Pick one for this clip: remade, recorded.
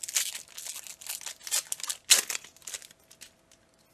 recorded